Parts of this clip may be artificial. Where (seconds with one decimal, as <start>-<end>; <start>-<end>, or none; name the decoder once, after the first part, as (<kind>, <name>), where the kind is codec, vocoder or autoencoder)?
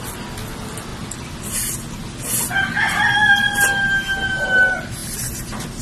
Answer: none